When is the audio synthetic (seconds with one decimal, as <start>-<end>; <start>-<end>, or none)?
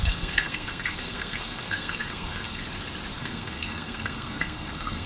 0.0-2.6; 3.2-5.1